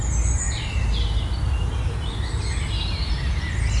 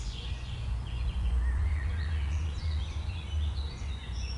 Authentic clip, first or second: first